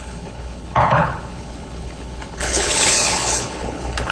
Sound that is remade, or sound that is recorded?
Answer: remade